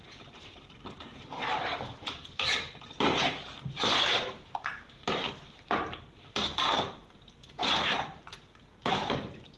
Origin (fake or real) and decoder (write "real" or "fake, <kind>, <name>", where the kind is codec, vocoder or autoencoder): fake, vocoder, BigVGAN v2